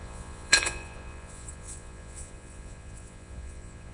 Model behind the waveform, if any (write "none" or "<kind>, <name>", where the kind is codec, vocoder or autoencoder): vocoder, Vocos